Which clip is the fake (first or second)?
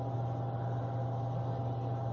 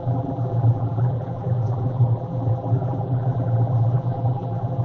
second